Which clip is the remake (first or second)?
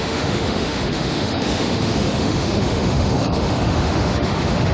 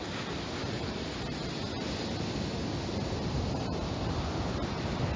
first